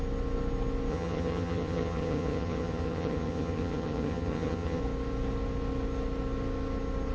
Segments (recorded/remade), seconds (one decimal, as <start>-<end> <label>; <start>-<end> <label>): 0.0-0.9 recorded; 0.9-4.8 remade; 4.8-7.1 recorded